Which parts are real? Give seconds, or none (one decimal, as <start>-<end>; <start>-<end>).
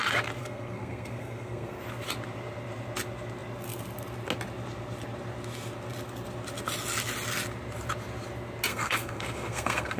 0.0-0.4; 1.8-8.7